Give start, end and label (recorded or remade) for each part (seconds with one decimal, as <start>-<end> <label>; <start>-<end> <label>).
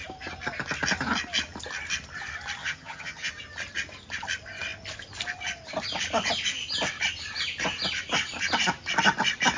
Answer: 0.0-2.6 recorded; 2.6-3.3 remade; 3.3-9.6 recorded